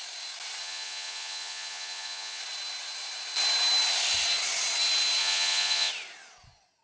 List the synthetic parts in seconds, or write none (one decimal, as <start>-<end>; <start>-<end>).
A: 0.6-2.4; 5.2-5.9